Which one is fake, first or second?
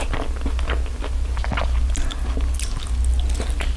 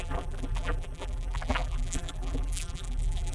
second